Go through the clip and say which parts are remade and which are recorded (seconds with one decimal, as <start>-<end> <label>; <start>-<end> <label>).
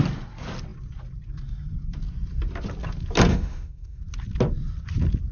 0.0-3.3 recorded; 3.3-4.0 remade; 4.0-5.3 recorded